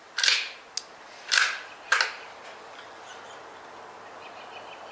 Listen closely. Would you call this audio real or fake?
real